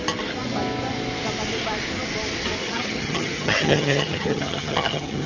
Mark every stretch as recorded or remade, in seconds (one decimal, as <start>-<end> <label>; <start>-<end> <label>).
0.0-2.6 recorded; 2.6-5.3 remade